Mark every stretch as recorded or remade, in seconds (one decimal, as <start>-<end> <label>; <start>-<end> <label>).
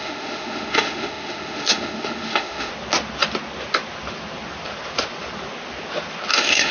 0.0-2.7 remade; 2.7-6.3 recorded; 6.3-6.7 remade